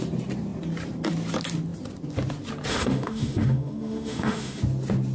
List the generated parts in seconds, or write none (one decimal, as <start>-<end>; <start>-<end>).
2.7-4.6